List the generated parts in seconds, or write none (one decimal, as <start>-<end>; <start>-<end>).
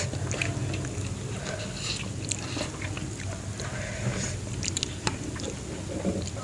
none